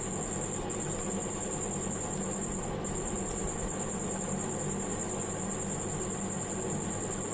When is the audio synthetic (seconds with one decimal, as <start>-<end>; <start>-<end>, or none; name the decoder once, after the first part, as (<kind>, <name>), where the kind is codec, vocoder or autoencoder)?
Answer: none